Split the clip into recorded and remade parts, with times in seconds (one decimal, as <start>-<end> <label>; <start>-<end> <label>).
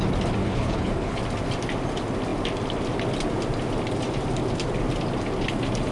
0.0-0.4 recorded; 0.4-1.2 remade; 1.2-5.9 recorded